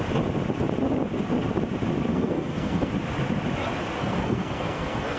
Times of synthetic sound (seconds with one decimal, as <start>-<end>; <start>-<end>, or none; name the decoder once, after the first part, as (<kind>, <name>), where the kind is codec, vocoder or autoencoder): 2.1-2.9 (codec, SNAC); 4.0-5.2